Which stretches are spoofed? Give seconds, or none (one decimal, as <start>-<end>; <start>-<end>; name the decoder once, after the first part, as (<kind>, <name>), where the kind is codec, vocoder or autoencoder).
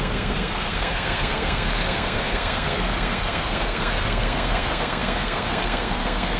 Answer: 0.0-6.4 (codec, SNAC)